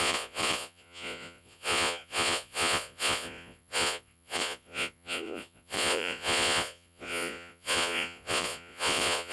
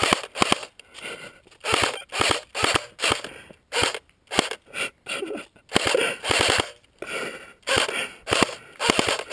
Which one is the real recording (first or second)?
second